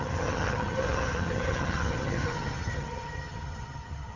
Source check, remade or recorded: remade